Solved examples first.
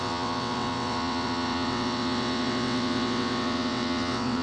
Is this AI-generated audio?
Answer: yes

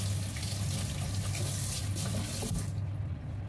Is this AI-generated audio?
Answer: no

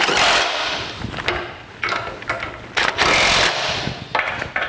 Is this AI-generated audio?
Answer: no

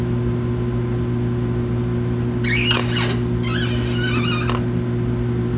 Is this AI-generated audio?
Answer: no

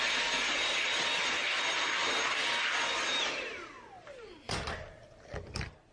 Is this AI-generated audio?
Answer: no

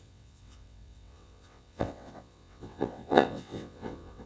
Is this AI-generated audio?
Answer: yes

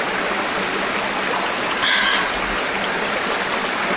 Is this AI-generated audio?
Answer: no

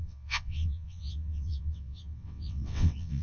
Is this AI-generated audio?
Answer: yes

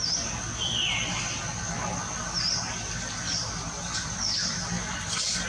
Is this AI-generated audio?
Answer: no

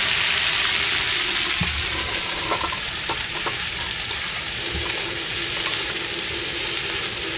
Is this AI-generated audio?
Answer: no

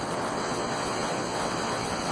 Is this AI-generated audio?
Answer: yes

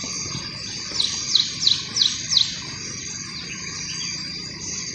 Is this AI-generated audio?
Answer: no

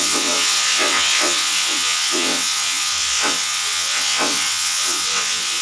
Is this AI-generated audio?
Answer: yes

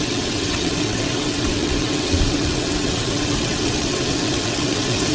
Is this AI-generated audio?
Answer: yes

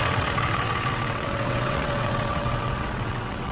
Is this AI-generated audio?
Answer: yes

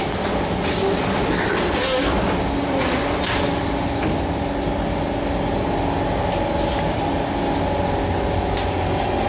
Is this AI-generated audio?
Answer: no